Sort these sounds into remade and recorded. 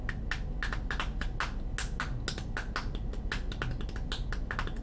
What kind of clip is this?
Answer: recorded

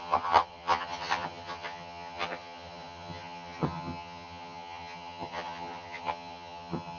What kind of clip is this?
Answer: remade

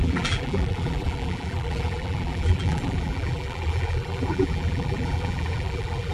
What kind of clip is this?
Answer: remade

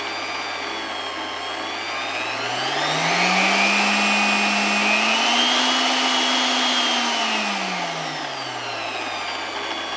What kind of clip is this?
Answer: recorded